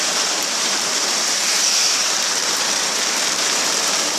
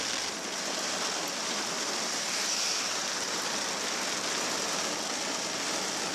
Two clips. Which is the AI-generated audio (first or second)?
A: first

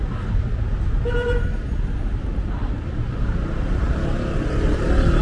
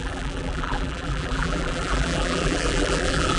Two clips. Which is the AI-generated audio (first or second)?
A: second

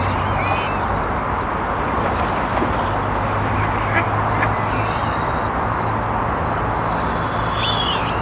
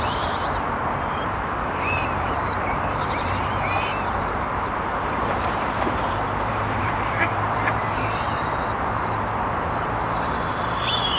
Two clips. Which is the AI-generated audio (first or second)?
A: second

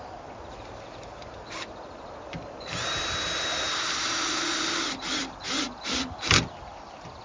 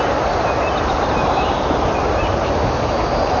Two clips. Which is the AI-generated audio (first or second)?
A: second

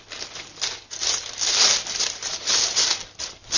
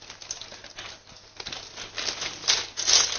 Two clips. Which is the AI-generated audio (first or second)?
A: first